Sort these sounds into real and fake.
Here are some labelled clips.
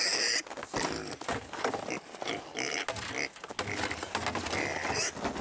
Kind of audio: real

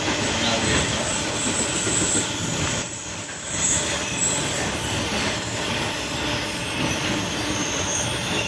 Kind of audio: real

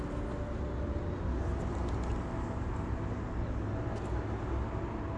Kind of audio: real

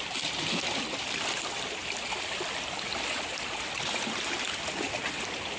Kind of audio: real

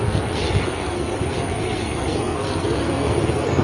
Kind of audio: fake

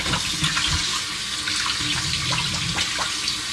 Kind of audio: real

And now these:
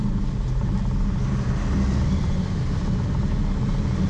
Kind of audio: real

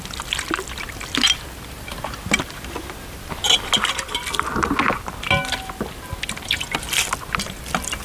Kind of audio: real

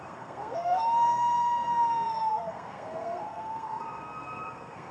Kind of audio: fake